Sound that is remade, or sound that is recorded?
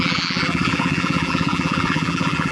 remade